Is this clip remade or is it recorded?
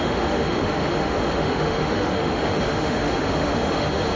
remade